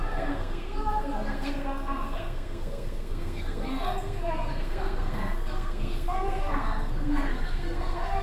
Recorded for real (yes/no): no